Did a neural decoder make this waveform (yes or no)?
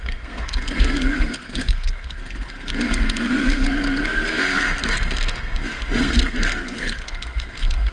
yes